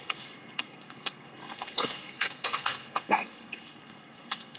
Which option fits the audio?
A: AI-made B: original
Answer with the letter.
A